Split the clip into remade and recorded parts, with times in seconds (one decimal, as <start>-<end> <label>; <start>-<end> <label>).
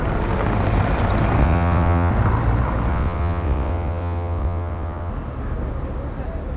0.0-1.4 recorded; 1.4-2.1 remade; 2.1-2.9 recorded; 2.9-5.1 remade; 5.1-6.6 recorded